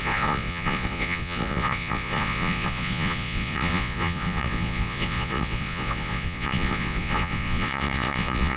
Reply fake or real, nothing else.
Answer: fake